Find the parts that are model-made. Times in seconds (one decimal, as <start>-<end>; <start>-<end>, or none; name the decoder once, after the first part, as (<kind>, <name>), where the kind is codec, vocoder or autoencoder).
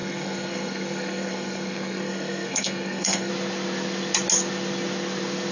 0.0-3.3 (codec, SNAC)